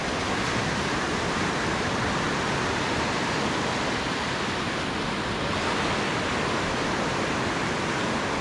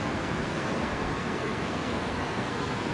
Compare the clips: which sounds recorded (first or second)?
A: first